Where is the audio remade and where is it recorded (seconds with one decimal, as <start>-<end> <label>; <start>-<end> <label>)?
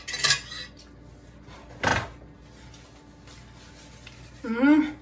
0.0-5.0 recorded